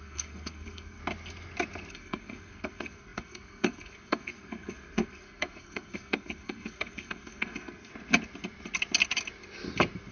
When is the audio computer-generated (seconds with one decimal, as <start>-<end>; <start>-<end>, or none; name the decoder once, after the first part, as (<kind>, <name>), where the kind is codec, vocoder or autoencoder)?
0.0-1.0 (codec, SNAC); 1.9-7.9